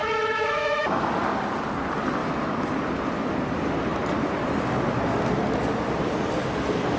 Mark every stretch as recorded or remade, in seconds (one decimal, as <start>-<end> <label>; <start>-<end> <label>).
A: 0.0-1.1 remade; 1.1-2.2 recorded; 2.2-2.8 remade; 2.8-7.0 recorded